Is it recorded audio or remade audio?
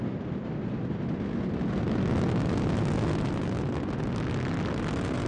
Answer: recorded